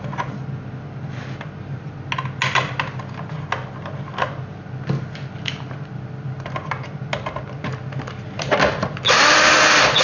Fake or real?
real